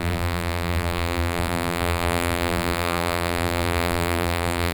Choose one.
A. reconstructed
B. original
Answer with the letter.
A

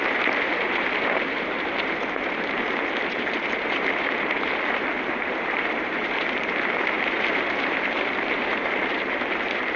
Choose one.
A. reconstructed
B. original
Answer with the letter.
A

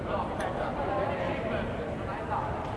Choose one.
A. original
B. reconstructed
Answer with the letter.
B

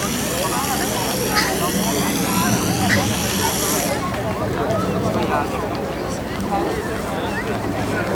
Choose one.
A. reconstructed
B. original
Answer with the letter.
B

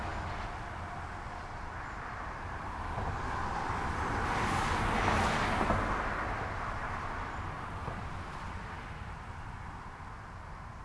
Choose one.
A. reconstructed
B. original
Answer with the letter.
B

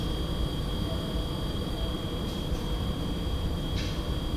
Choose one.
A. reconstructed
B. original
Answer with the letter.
A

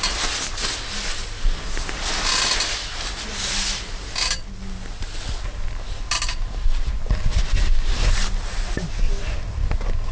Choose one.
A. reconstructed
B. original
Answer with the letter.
B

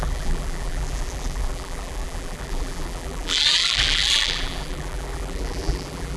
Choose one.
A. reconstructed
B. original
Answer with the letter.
A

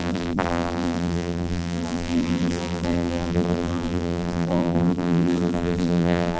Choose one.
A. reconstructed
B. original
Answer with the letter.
A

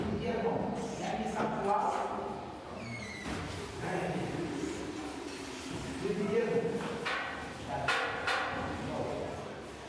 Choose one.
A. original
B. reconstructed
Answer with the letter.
A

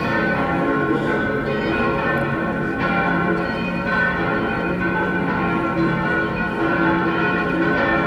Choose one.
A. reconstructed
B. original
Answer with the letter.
A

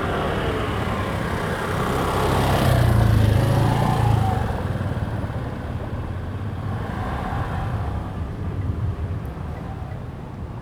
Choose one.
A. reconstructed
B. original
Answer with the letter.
B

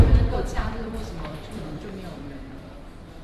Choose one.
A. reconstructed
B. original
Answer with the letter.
A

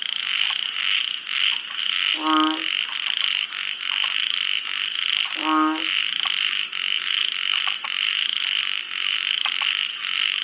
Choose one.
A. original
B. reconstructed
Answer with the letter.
A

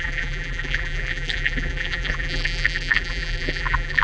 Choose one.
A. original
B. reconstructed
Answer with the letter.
B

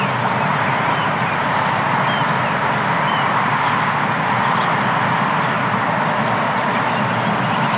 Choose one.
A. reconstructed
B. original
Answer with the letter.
B